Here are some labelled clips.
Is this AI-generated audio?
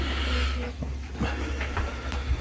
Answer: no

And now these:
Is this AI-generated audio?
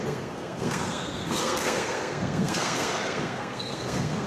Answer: yes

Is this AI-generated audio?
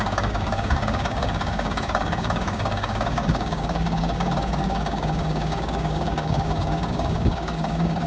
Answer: yes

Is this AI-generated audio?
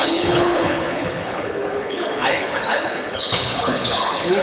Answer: yes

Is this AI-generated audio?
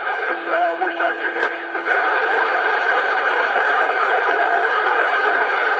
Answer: yes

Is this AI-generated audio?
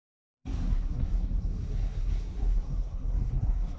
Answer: yes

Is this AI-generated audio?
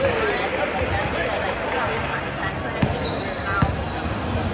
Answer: no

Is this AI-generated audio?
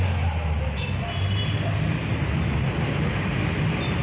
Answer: no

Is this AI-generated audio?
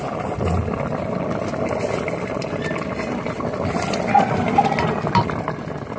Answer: no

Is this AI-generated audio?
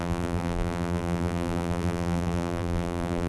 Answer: yes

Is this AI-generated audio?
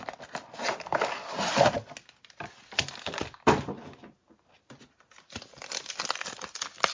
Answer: no